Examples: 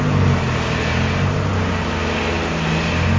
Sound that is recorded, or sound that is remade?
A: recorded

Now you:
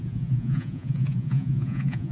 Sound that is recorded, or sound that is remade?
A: remade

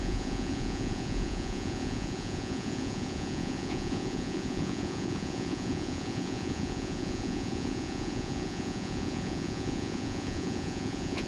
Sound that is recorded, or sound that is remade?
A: remade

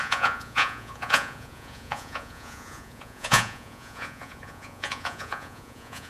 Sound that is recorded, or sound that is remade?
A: remade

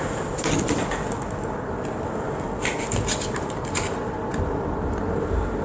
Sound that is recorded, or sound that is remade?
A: recorded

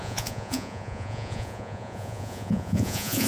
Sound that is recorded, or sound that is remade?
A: remade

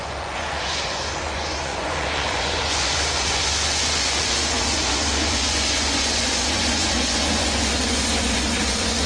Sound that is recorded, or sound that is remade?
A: remade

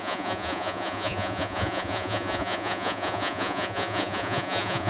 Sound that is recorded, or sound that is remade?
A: remade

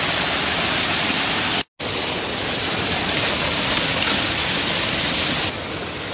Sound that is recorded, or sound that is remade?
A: recorded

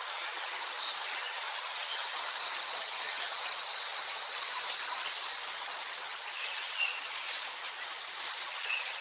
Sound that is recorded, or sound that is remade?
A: remade